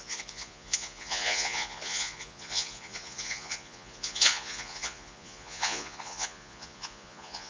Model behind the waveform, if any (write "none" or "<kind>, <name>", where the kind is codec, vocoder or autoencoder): vocoder, Vocos